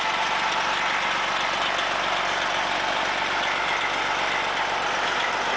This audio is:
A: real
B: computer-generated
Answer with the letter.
A